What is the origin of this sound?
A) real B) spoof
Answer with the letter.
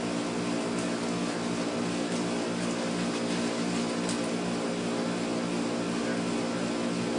A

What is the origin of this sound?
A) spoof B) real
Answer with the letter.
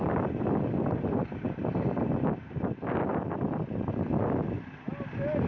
B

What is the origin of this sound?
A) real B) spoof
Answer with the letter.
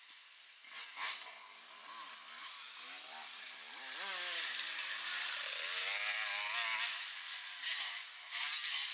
B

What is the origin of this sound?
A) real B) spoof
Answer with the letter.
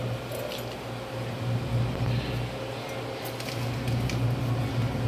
A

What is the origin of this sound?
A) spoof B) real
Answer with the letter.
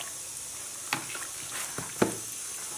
B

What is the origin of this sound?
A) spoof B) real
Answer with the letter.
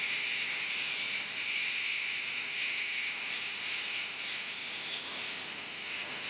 B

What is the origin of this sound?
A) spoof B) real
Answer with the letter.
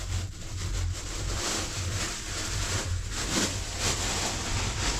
A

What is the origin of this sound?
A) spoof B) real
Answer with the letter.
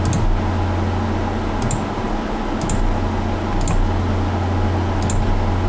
B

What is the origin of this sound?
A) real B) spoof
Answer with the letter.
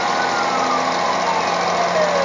A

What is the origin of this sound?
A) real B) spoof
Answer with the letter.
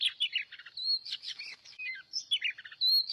A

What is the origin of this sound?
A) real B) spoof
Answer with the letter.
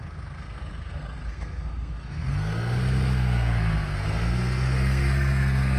B